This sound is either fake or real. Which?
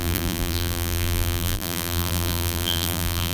fake